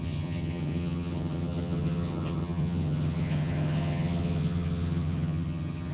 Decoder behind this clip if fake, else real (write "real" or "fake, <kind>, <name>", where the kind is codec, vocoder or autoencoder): fake, vocoder, HiFi-GAN